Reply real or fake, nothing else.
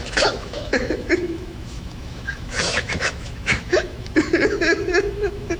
fake